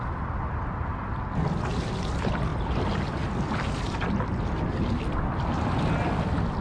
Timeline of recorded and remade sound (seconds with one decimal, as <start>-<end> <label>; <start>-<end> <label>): 0.0-6.6 recorded